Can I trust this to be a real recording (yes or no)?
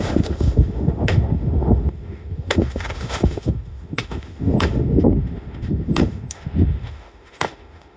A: no